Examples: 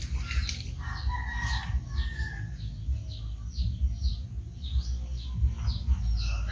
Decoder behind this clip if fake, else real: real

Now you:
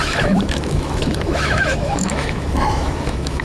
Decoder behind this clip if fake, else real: fake, autoencoder, DAC-VAE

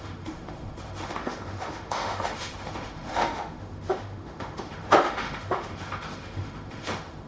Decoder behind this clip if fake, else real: fake, autoencoder, DAC-VAE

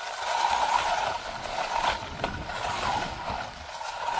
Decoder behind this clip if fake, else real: real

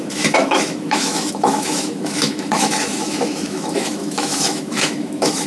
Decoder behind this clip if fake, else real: fake, autoencoder, DAC-VAE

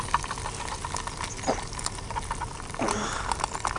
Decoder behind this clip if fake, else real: real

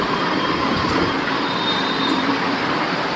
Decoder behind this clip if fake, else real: real